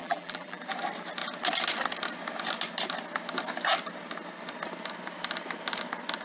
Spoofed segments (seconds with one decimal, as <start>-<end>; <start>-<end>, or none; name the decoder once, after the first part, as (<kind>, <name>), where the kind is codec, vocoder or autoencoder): 0.0-0.6 (vocoder, BigVGAN v2)